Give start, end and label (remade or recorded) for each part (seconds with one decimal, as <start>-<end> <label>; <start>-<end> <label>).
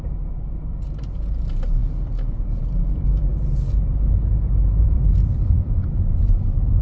0.0-6.8 remade